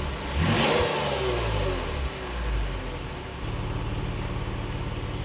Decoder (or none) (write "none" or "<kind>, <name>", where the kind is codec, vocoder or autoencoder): none